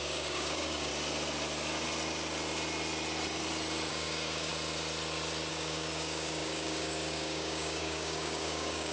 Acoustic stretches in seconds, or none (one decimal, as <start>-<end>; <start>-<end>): 0.9-3.9; 4.5-5.5